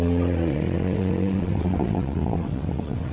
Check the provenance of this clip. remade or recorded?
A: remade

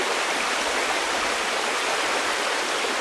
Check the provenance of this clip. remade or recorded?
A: recorded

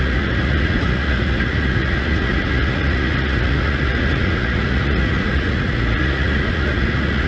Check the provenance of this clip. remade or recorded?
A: remade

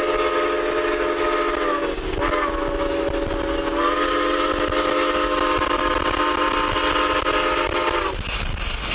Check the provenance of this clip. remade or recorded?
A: recorded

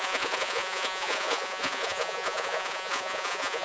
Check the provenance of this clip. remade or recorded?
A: remade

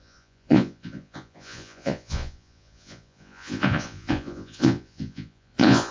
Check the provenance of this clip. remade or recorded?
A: remade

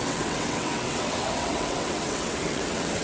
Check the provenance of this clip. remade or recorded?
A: remade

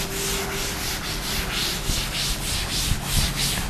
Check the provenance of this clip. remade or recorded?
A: recorded